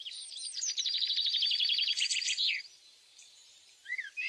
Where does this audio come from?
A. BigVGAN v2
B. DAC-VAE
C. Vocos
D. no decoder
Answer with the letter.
A